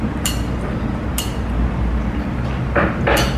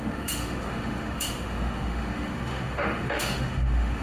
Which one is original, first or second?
first